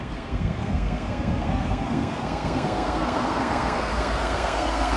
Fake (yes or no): yes